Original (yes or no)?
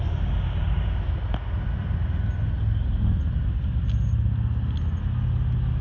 yes